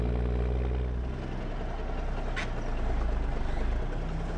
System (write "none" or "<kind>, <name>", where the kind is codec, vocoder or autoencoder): none